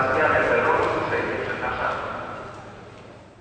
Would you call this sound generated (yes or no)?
no